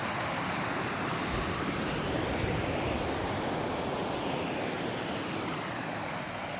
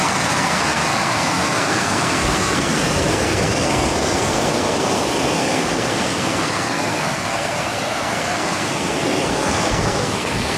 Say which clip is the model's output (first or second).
second